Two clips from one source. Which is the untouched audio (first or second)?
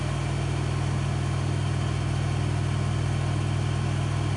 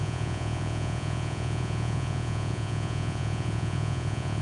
first